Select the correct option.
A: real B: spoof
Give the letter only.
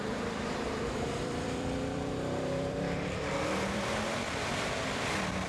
B